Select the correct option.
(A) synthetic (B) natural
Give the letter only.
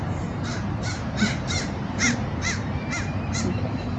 A